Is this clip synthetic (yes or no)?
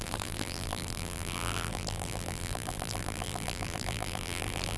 yes